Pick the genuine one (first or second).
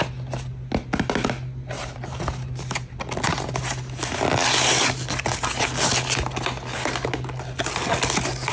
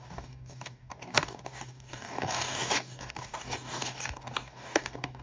first